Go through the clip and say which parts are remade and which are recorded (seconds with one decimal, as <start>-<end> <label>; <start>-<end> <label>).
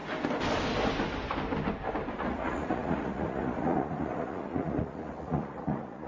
0.0-2.2 recorded; 2.2-6.1 remade